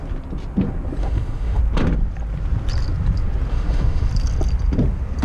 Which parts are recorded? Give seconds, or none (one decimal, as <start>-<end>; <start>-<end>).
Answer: 0.0-1.0; 1.6-3.5; 4.1-5.2